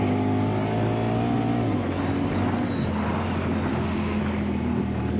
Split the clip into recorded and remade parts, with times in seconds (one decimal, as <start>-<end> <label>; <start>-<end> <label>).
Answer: 0.0-3.7 recorded; 3.7-4.2 remade; 4.2-5.2 recorded